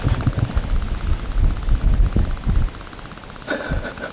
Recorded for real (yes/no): yes